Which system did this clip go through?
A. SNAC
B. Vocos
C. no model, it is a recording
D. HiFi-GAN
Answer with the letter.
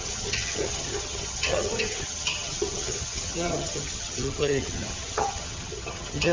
D